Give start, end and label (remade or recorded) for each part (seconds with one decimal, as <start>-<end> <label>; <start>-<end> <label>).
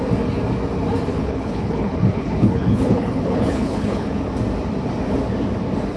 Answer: 0.0-1.1 recorded; 1.1-4.2 remade; 4.2-6.0 recorded